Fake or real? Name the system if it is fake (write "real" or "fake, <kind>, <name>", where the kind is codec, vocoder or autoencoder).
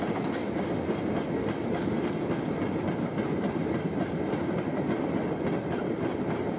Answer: real